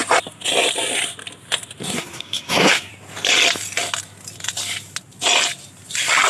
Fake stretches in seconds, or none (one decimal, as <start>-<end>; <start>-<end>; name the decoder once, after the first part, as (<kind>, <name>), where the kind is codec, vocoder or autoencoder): 1.8-2.9 (codec, SNAC)